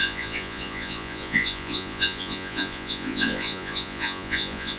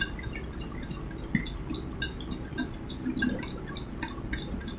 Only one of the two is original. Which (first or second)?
second